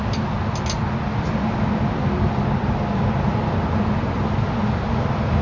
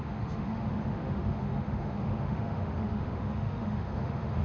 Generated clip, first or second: second